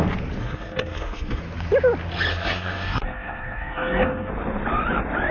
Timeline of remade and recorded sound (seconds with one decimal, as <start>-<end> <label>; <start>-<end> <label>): 0.0-0.4 recorded; 0.4-1.4 remade; 1.4-2.3 recorded; 2.3-4.3 remade; 4.3-5.3 recorded